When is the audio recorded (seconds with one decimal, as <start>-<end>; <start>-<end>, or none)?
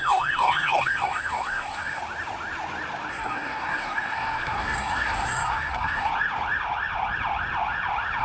2.0-3.1; 6.1-8.2